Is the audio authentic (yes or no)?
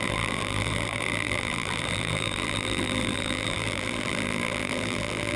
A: no